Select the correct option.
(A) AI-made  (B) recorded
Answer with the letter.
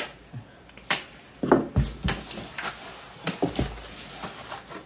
B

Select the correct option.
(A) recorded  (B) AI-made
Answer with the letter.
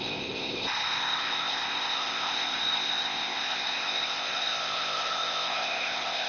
B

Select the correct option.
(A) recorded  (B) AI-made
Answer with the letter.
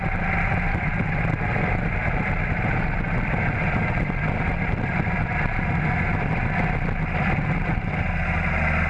A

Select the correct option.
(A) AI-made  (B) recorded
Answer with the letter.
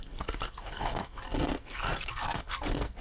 A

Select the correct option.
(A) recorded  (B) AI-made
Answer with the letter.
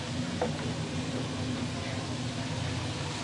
A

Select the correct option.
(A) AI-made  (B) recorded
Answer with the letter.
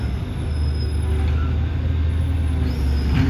B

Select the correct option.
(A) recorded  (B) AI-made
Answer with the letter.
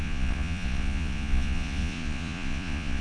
B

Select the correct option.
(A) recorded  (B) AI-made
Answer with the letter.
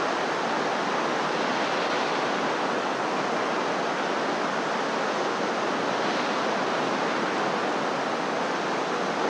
A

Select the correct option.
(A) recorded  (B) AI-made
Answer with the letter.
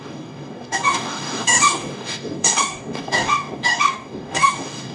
B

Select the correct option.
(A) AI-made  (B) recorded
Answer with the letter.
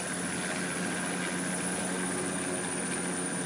B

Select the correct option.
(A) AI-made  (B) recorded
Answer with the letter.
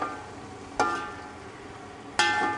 B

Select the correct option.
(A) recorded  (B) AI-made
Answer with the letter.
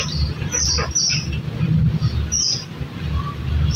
A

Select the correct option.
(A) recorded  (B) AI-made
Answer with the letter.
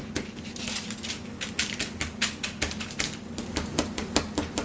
A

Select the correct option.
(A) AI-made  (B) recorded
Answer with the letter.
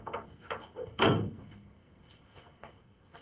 A